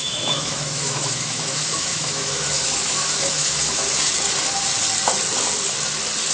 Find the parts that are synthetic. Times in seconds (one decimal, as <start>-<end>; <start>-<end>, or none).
0.0-3.9